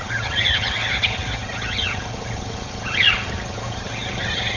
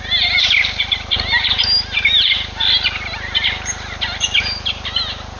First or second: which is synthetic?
first